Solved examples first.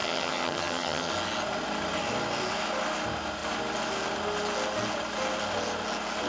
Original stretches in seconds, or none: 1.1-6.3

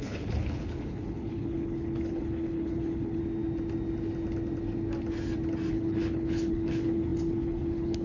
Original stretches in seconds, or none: 3.2-5.7

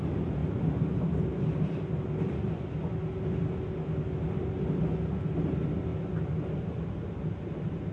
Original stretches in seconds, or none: 0.0-7.9

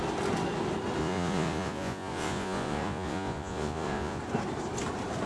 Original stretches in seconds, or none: 0.0-1.0; 4.2-5.3

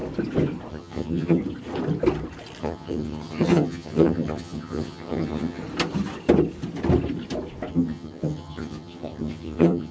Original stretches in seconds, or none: 0.0-0.7; 1.4-2.6; 5.6-7.7